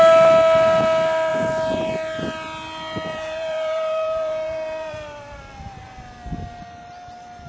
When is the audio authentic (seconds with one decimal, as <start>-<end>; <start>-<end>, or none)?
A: 0.0-1.3; 1.9-3.1; 5.4-7.5